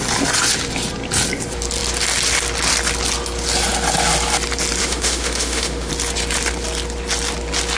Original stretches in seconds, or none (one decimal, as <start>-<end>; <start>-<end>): 0.0-4.8; 5.9-7.8